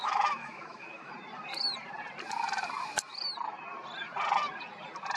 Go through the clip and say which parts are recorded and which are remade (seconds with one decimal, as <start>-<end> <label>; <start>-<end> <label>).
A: 0.0-1.1 remade; 1.1-5.2 recorded